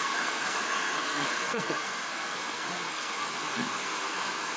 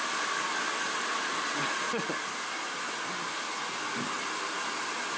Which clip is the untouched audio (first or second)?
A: second